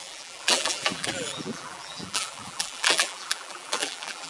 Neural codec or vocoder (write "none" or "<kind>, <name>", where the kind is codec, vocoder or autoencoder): vocoder, BigVGAN v2